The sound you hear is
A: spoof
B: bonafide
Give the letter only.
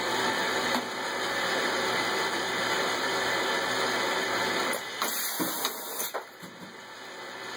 B